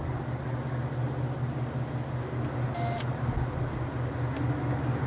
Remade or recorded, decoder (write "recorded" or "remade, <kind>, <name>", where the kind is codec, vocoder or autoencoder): recorded